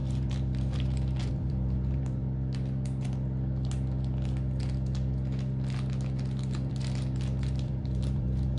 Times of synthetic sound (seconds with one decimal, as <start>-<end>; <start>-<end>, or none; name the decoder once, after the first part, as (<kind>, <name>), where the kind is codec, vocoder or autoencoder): 0.0-2.2 (vocoder, BigVGAN v2); 6.7-8.6